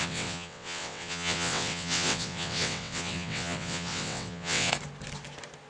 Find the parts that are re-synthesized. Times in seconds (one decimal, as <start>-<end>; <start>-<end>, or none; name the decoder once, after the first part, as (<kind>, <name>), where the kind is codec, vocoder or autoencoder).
0.0-4.7 (vocoder, WaveNeXt)